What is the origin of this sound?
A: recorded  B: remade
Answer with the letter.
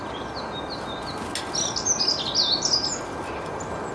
A